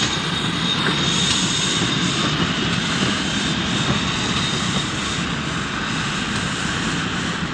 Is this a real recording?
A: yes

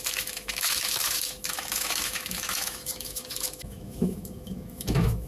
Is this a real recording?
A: no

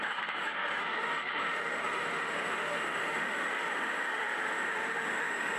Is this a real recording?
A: no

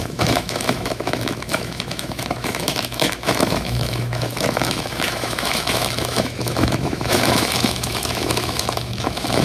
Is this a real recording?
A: no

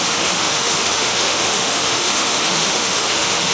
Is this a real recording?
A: no